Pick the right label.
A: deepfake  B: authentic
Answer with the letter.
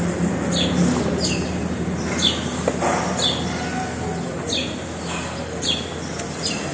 B